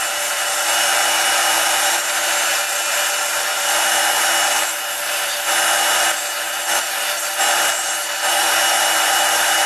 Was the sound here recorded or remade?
remade